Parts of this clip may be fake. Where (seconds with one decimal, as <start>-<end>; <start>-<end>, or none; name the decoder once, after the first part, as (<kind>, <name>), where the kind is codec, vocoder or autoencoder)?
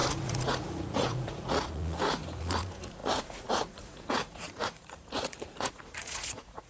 0.0-6.7 (vocoder, Vocos)